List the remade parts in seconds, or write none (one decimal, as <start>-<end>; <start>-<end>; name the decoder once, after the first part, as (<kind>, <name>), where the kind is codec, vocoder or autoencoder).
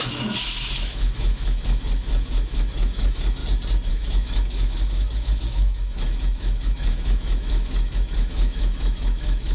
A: 0.0-3.4 (autoencoder, DAC-VAE); 3.9-9.5